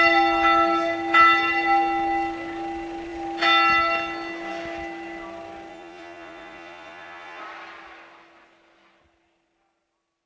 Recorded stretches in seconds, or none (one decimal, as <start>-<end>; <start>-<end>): 0.0-5.7; 7.4-10.3